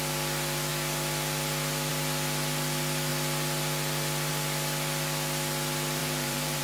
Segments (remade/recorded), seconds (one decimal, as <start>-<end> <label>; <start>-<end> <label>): 0.0-6.0 recorded; 6.0-6.6 remade